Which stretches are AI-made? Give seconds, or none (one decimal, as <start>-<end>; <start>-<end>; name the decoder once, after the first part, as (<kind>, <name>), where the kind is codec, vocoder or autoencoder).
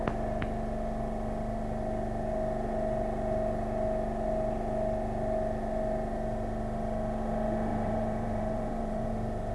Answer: 7.7-9.1 (vocoder, BigVGAN v2)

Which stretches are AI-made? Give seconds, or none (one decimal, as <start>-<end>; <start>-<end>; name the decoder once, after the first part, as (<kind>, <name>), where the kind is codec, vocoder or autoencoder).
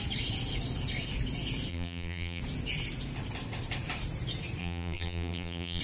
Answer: 1.7-2.4 (vocoder, BigVGAN v2); 4.6-5.8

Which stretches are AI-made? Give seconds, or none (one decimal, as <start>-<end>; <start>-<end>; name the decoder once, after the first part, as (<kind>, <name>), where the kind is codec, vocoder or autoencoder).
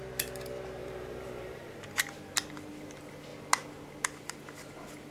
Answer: 0.8-2.2 (vocoder, BigVGAN v2)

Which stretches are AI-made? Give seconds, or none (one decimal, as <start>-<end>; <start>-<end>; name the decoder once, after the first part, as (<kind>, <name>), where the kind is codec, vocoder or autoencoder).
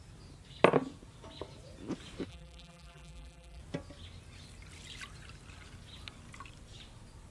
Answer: 2.3-3.6 (vocoder, BigVGAN v2)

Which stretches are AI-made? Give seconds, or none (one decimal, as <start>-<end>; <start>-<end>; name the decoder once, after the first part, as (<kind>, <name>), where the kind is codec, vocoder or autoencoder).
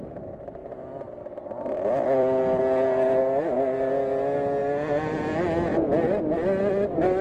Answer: 0.6-2.6 (vocoder, BigVGAN v2); 4.6-5.2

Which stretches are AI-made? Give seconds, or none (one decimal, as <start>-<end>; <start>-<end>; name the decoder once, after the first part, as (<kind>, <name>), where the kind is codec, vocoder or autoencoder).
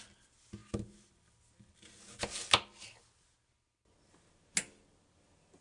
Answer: none